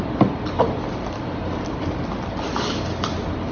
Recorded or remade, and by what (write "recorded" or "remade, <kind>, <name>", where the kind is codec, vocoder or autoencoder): recorded